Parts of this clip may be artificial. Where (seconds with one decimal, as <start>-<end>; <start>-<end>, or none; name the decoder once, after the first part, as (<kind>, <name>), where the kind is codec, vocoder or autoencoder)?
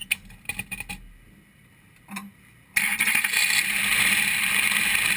none